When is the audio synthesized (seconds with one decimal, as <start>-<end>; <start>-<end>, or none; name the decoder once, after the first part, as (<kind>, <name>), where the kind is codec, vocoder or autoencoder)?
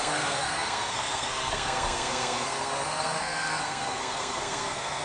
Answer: 0.0-5.0 (codec, SNAC)